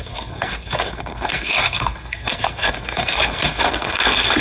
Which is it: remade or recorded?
remade